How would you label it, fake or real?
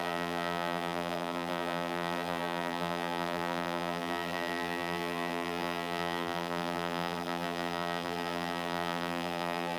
fake